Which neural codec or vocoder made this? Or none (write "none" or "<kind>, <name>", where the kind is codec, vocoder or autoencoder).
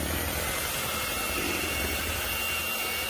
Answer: none